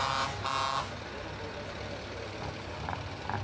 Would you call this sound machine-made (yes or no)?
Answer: no